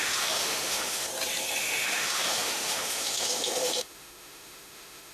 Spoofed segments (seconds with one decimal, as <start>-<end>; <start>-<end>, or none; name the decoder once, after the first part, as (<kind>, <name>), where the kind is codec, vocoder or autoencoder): 0.0-1.1 (autoencoder, DAC-VAE); 1.6-5.1